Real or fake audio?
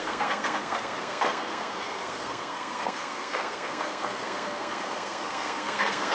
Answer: fake